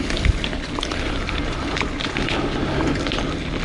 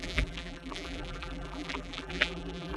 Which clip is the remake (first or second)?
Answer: second